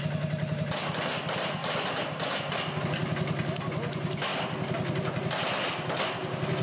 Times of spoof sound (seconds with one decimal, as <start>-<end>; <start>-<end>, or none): 1.6-2.8